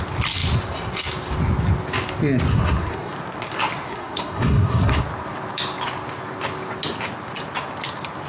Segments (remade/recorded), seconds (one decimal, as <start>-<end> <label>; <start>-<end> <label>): 0.0-2.5 recorded; 2.5-3.1 remade; 3.1-3.9 recorded; 3.9-5.0 remade; 5.0-8.3 recorded